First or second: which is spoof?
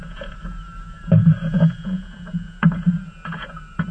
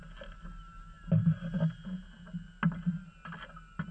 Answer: first